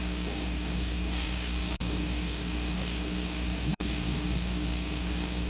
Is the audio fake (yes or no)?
yes